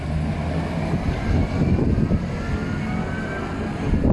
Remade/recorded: recorded